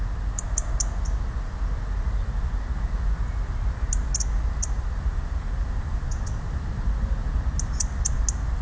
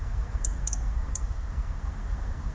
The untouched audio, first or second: first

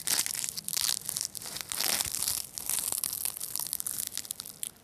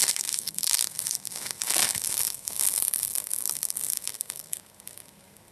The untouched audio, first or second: first